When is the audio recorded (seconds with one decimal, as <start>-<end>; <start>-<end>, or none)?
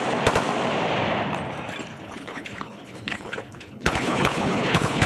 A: 0.0-1.9